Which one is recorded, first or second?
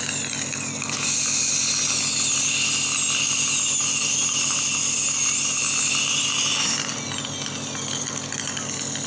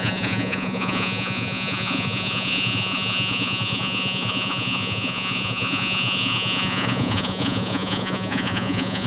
first